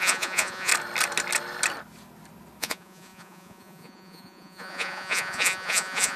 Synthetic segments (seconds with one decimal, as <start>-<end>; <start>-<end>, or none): 0.0-0.7; 2.6-6.2